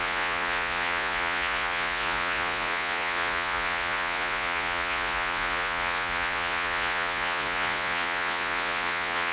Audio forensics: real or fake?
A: fake